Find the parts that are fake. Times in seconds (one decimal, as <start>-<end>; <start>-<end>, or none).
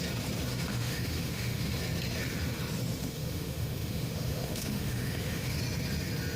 0.7-1.7; 3.0-5.6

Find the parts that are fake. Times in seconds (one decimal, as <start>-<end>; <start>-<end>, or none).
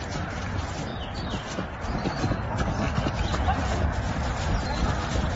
none